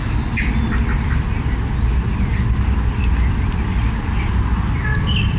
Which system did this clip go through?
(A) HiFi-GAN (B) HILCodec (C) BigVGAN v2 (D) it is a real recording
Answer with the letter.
D